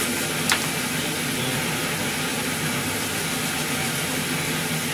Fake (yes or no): no